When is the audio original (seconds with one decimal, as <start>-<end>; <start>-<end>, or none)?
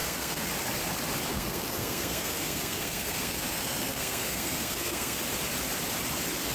0.5-1.3; 5.2-6.5